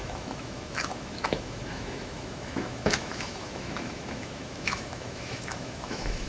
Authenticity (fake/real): fake